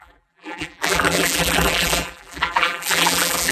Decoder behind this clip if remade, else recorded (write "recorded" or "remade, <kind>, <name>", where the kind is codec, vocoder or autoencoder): remade, vocoder, BigVGAN v2